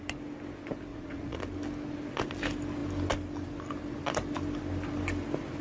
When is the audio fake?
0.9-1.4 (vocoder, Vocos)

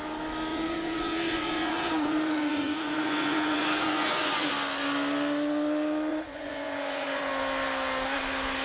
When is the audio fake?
0.5-4.5 (vocoder, Vocos); 6.1-7.3

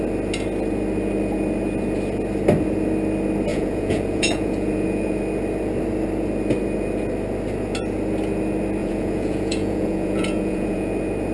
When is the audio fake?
3.5-5.2 (vocoder, Vocos); 8.8-10.9

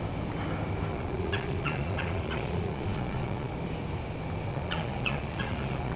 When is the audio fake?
0.9-3.5 (vocoder, Vocos); 4.5-6.0

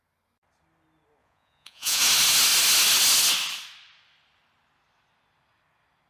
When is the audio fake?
1.2-2.0 (vocoder, Vocos)